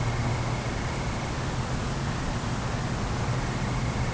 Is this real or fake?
real